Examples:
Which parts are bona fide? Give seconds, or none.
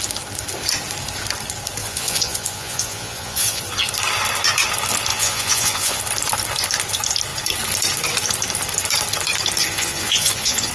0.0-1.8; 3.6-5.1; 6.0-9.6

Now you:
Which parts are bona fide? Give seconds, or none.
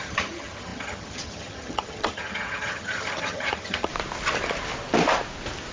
3.9-5.7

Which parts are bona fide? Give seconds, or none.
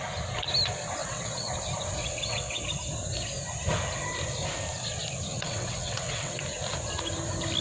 0.0-1.0; 1.5-2.0; 2.6-5.3; 6.4-7.6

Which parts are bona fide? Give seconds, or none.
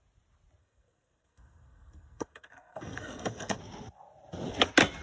0.0-0.6; 3.6-5.0